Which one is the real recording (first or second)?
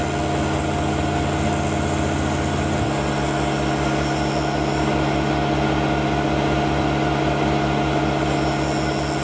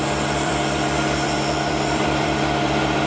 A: first